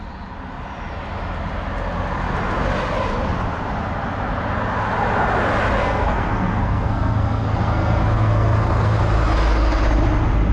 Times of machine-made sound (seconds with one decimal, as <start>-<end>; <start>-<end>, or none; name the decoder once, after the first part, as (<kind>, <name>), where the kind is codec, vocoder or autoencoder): 5.8-9.0 (codec, SNAC)